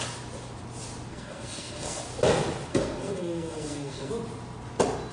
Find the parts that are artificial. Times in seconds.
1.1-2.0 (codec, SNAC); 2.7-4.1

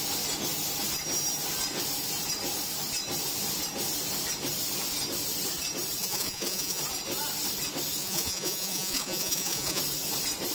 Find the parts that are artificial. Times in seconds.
6.0-6.8 (vocoder, Vocos); 8.0-9.8

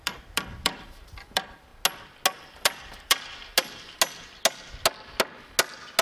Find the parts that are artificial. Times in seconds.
0.0-1.7 (vocoder, BigVGAN v2); 2.4-3.5

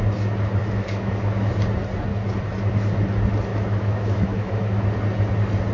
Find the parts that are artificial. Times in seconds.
0.6-1.5 (autoencoder, DAC-VAE); 3.5-4.8

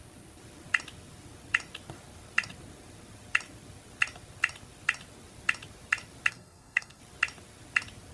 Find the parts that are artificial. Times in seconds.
6.3-7.0 (codec, SNAC)

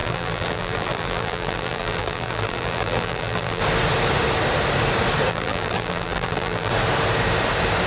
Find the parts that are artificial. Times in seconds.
0.0-3.6 (vocoder, BigVGAN v2); 5.3-6.7